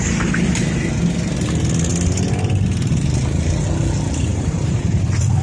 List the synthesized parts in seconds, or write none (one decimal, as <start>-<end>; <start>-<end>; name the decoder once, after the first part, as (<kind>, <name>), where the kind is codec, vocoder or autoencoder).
4.3-5.0 (vocoder, BigVGAN v2)